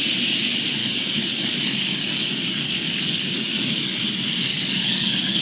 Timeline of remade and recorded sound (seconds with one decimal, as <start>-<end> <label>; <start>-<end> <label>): 0.0-0.8 recorded; 0.8-4.0 remade; 4.0-4.5 recorded; 4.5-5.4 remade